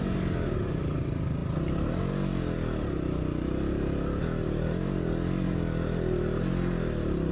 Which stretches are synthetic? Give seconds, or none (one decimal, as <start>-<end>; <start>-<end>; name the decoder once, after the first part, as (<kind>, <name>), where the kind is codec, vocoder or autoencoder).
none